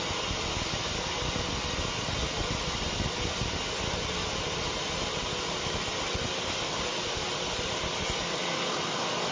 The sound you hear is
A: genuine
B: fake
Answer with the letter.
A